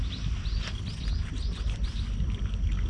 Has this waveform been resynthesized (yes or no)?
no